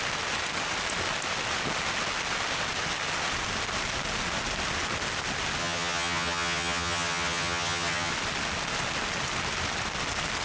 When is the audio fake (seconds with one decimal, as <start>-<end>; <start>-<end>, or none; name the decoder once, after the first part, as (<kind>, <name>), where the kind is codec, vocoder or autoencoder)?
5.6-8.1 (vocoder, HiFi-GAN)